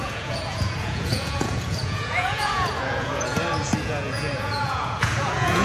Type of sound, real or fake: fake